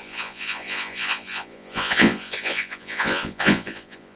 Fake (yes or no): yes